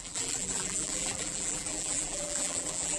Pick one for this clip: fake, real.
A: fake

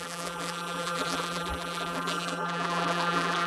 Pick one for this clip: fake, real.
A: fake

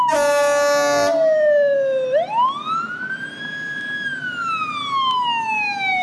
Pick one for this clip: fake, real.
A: real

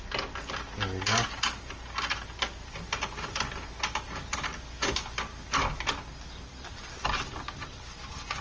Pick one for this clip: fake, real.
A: real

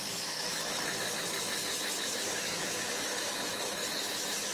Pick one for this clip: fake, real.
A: fake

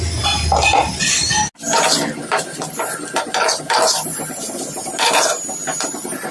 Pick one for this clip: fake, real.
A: real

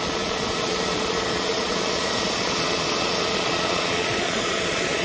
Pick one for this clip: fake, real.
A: fake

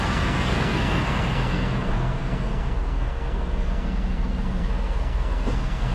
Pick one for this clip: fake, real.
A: fake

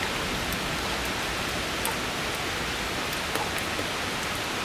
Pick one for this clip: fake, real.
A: real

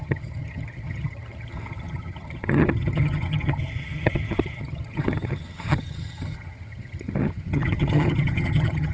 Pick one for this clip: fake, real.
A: fake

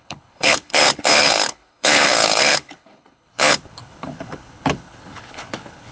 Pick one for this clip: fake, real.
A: fake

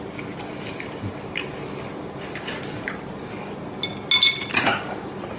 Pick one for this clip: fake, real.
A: real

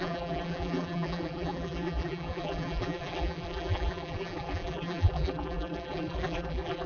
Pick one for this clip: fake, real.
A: fake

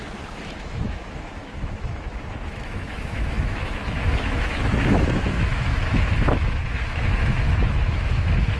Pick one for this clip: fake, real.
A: fake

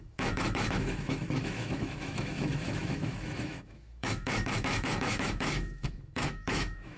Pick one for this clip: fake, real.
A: fake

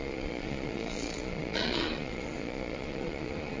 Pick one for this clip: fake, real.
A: fake